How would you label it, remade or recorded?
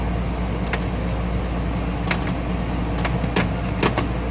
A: recorded